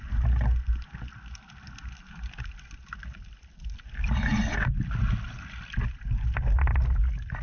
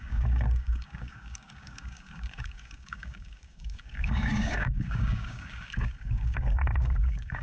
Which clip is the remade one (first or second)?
second